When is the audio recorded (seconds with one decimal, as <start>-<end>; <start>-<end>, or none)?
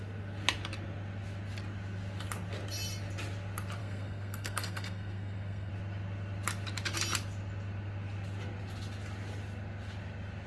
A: 0.0-3.8; 5.7-10.5